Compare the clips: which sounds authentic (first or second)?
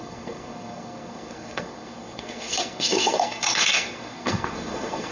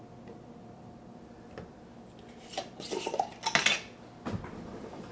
second